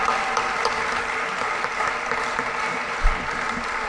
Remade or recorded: remade